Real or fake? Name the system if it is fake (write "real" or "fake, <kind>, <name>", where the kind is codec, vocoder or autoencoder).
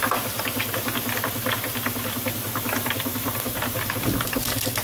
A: real